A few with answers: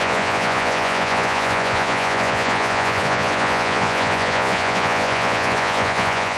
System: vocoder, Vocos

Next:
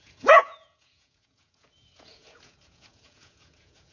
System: vocoder, Vocos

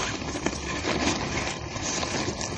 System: none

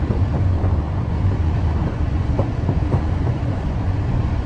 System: vocoder, Vocos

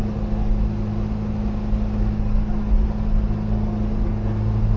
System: none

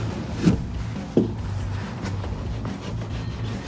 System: none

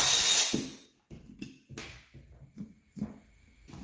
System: none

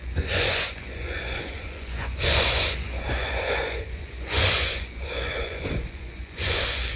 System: vocoder, Vocos